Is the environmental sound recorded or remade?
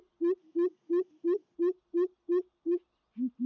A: recorded